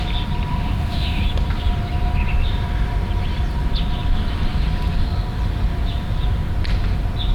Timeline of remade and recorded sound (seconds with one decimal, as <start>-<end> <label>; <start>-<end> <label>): 0.0-0.5 recorded; 0.5-1.2 remade; 1.2-7.3 recorded

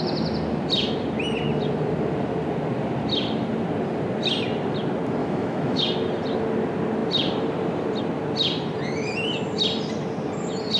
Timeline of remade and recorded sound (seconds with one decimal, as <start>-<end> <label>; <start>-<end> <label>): 0.0-5.2 recorded; 5.2-5.8 remade; 5.8-10.8 recorded

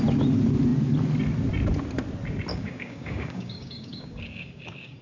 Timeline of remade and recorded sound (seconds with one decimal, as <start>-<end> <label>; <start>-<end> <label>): 0.0-2.5 recorded; 2.5-5.0 remade

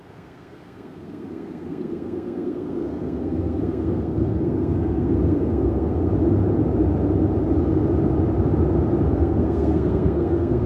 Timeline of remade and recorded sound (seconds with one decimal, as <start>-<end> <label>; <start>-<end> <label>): 0.0-6.1 remade; 6.1-9.1 recorded; 9.1-10.7 remade

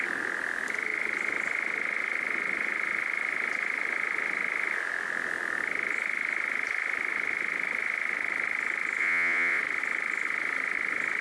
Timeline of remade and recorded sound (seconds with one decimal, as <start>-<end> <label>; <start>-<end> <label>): 0.0-9.0 recorded; 9.0-9.6 remade; 9.6-11.2 recorded

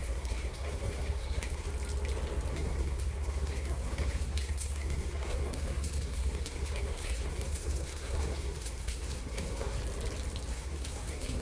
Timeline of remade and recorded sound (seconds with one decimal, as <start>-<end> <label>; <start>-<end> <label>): 0.0-1.7 remade; 1.7-2.5 recorded; 2.5-9.8 remade; 9.8-10.5 recorded; 10.5-11.4 remade

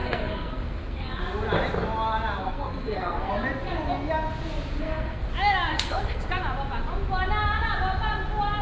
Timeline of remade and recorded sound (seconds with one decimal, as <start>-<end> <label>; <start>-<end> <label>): 0.0-1.2 remade; 1.2-2.4 recorded; 2.4-3.3 remade; 3.3-4.8 recorded; 4.8-5.3 remade; 5.3-5.7 recorded; 5.7-6.3 remade; 6.3-8.6 recorded